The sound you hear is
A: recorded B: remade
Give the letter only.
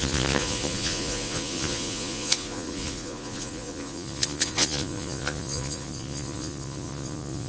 B